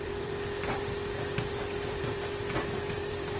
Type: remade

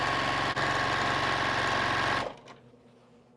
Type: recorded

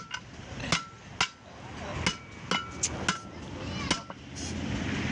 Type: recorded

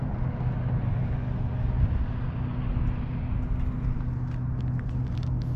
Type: recorded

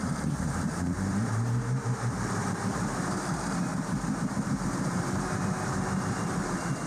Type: remade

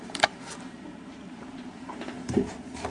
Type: remade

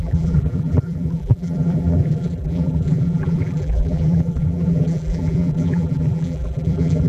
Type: remade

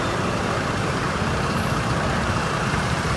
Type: remade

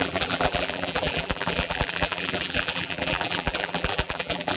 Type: remade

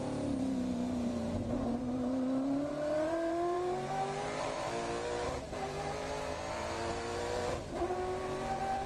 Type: remade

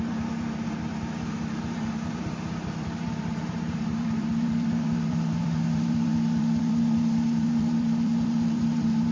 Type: remade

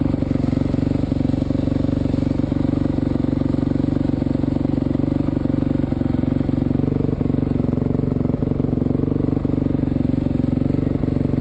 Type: remade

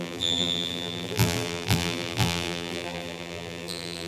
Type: remade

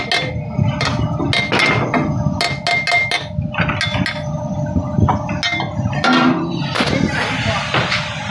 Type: recorded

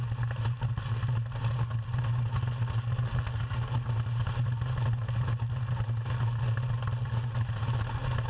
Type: recorded